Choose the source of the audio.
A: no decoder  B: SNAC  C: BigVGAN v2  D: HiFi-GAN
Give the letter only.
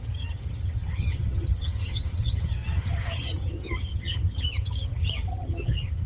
D